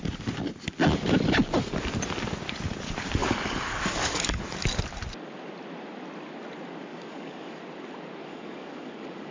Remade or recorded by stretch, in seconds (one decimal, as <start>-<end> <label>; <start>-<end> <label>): 0.0-3.2 recorded; 3.2-4.4 remade; 4.4-6.9 recorded; 6.9-7.6 remade; 7.6-8.2 recorded; 8.2-9.3 remade